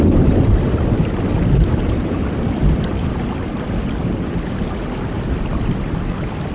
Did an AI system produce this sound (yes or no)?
no